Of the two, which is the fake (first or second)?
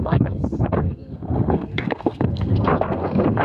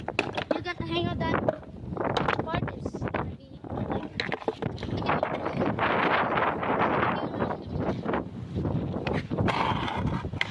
first